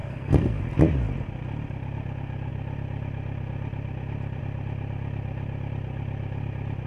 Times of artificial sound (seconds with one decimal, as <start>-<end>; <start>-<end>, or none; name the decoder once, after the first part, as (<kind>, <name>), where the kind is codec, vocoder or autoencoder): 0.0-0.6 (codec, SNAC)